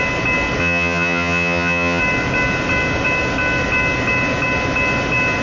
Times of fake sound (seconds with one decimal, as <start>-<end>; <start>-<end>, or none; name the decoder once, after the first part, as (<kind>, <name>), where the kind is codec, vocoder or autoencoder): 0.6-2.0 (vocoder, HiFi-GAN)